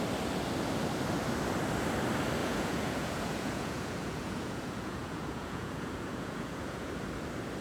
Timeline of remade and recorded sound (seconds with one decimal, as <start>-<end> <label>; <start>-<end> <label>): 0.0-2.4 recorded; 2.4-6.9 remade; 6.9-7.6 recorded